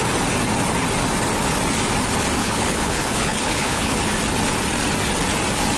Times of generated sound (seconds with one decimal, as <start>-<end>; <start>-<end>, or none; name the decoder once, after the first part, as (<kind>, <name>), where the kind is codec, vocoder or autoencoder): 2.4-4.1 (codec, HILCodec)